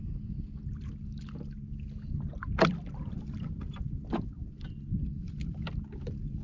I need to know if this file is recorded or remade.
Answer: recorded